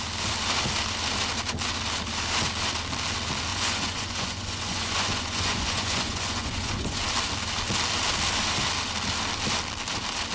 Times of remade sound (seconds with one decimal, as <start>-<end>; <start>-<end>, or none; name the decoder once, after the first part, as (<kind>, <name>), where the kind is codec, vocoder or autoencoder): 3.5-7.1 (vocoder, Vocos)